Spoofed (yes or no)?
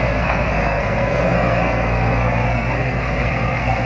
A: yes